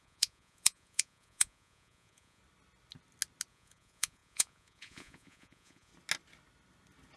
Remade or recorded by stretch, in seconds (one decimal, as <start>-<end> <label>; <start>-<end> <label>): 0.0-2.4 remade; 2.4-3.5 recorded; 3.5-5.9 remade; 5.9-7.2 recorded